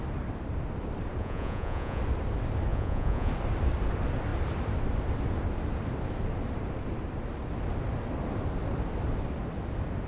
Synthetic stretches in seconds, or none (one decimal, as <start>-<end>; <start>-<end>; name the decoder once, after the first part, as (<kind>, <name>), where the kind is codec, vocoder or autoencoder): 1.2-2.0 (vocoder, Vocos); 2.7-3.3

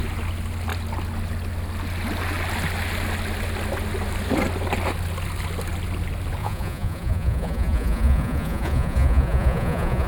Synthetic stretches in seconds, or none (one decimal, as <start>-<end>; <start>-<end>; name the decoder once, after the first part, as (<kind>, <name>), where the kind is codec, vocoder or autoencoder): 6.4-10.1 (vocoder, Vocos)

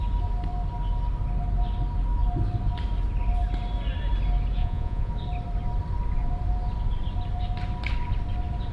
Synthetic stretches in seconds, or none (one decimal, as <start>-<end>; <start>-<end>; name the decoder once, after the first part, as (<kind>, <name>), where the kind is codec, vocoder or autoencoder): 4.6-5.1 (vocoder, Vocos)

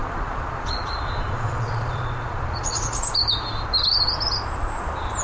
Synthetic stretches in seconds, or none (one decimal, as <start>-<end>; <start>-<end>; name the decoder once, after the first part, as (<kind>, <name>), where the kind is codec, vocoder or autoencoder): 0.0-3.1 (vocoder, Vocos)